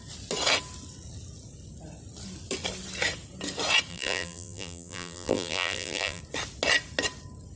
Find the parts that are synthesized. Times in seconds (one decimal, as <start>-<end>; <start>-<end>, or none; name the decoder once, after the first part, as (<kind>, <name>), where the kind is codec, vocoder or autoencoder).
3.9-6.2 (vocoder, BigVGAN v2)